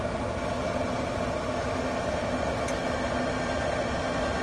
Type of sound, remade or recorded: recorded